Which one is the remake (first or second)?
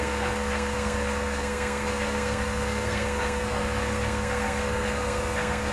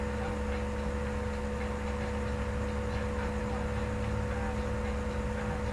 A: first